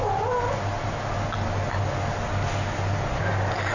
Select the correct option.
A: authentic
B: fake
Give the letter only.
A